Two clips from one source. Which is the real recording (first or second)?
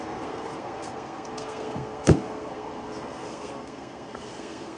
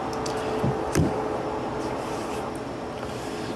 second